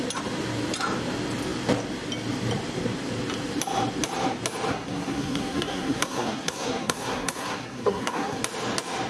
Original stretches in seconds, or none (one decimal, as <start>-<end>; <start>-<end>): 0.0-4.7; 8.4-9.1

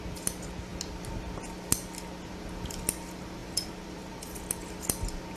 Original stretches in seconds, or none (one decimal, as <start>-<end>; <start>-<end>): 0.0-3.4; 4.7-5.4

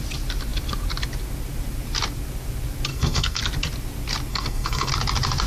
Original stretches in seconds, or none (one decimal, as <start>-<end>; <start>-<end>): 0.0-2.9; 3.4-4.3; 4.9-5.5

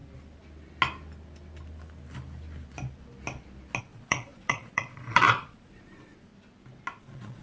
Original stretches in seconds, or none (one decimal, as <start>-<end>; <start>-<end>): 0.0-3.8; 6.3-7.0

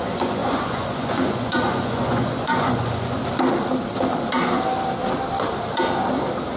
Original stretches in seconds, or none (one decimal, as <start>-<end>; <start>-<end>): 3.2-6.6

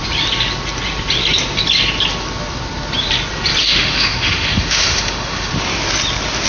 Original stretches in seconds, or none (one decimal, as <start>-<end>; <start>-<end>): 0.0-3.6; 5.5-6.5

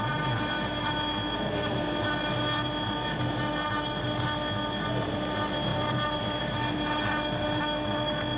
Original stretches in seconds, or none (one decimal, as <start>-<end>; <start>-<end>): 0.0-5.7; 6.4-8.4

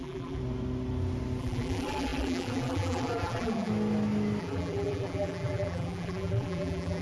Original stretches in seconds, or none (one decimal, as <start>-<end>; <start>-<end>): 0.4-1.4; 3.7-4.4